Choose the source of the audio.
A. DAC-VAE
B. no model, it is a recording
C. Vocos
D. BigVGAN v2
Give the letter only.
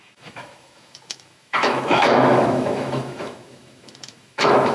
A